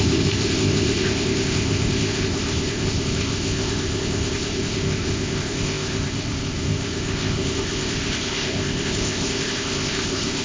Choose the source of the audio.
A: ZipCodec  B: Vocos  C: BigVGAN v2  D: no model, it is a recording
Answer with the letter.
A